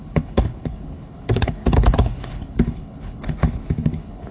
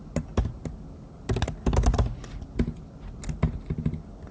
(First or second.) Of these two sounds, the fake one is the first